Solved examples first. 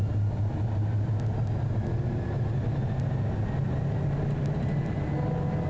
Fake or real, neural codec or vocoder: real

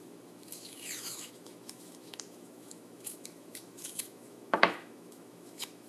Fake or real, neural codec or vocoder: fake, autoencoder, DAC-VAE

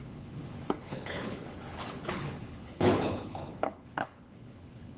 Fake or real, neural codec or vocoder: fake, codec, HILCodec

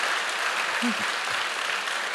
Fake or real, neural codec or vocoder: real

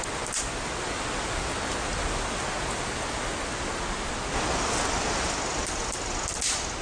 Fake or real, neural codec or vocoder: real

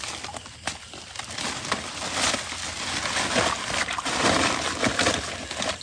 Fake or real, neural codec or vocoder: real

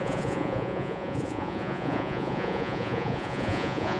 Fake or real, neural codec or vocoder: fake, vocoder, Vocos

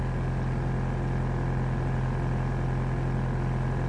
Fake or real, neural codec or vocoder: real